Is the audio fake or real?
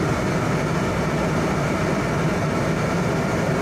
real